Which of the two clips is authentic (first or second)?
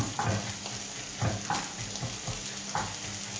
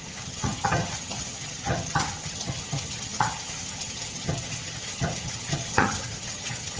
first